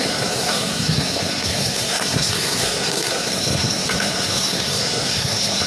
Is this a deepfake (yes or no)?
yes